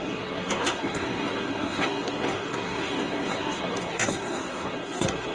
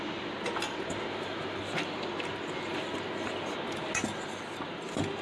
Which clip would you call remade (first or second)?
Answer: first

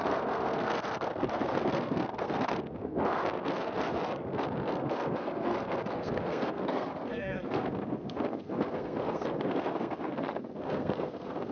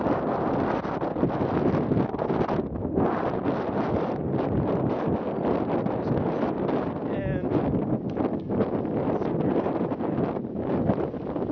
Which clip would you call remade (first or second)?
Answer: first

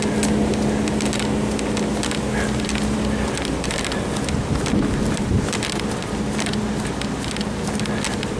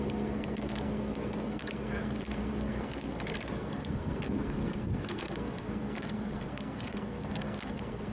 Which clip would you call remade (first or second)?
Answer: second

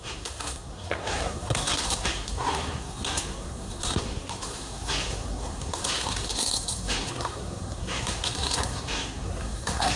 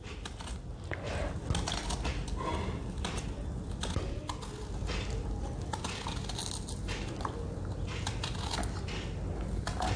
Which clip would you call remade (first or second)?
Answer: first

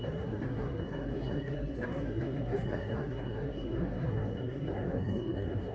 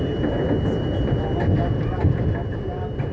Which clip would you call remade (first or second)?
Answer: first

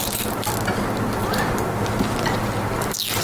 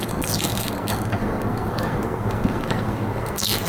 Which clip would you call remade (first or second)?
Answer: second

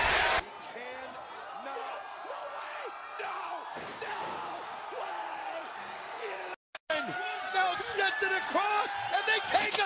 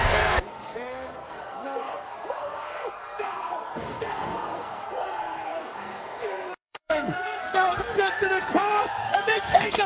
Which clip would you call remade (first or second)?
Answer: second